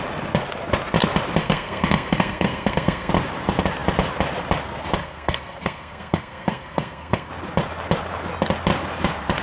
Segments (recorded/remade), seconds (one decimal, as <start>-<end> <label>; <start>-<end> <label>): 0.0-1.4 recorded; 1.4-3.1 remade; 3.1-5.0 recorded; 5.0-7.3 remade; 7.3-9.4 recorded